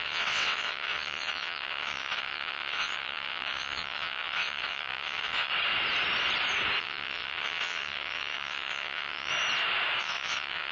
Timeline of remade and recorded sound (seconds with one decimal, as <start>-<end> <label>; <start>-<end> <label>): 0.0-5.5 remade; 5.5-6.8 recorded; 6.8-9.3 remade; 9.3-10.0 recorded; 10.0-10.7 remade